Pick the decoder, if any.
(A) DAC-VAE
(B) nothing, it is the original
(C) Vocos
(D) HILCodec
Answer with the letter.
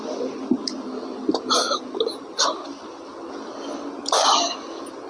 B